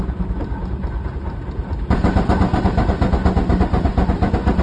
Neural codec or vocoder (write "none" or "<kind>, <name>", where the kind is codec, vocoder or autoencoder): none